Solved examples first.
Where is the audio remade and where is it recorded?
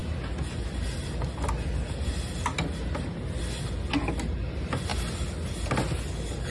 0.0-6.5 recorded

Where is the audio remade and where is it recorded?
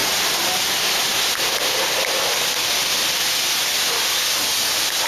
0.0-0.5 remade; 0.5-5.1 recorded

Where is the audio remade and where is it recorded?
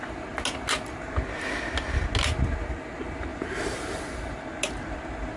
0.0-3.3 recorded; 3.3-4.4 remade; 4.4-5.4 recorded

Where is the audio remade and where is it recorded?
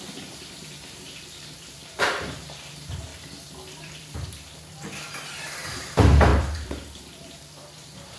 0.0-3.1 remade; 3.1-3.8 recorded; 3.8-8.2 remade